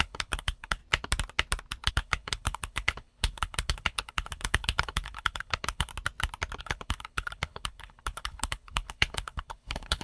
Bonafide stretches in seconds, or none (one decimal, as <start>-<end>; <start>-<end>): 0.8-1.9; 5.9-6.6